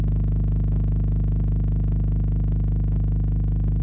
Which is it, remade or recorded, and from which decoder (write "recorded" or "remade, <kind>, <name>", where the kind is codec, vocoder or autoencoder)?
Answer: recorded